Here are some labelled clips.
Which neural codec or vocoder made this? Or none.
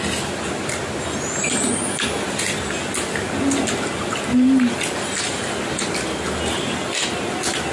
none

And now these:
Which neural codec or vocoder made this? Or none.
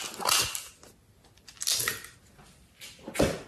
none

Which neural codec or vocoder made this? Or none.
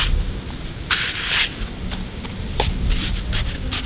none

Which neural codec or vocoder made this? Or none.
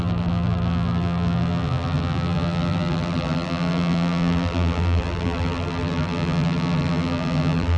vocoder, BigVGAN v2